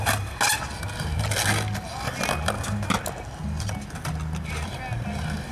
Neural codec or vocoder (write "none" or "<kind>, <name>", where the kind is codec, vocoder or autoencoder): none